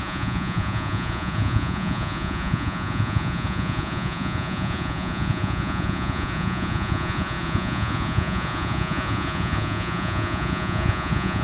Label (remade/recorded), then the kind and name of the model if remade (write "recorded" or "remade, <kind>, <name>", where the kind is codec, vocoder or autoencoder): remade, vocoder, Vocos